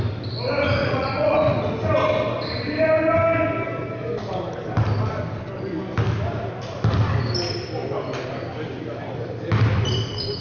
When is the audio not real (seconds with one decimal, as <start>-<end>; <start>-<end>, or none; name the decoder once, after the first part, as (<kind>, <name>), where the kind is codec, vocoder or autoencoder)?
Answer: 0.8-1.6 (vocoder, Vocos)